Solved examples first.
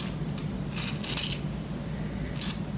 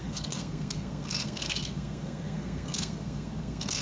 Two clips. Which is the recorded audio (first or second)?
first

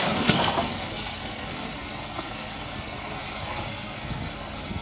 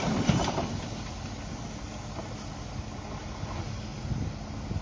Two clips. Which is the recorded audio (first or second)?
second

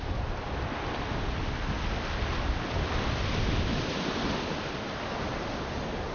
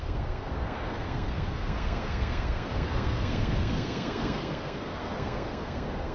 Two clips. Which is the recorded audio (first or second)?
first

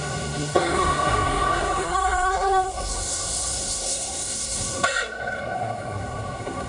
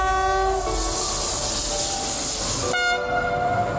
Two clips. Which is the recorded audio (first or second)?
second